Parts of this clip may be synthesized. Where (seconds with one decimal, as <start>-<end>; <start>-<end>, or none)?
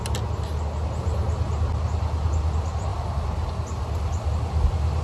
none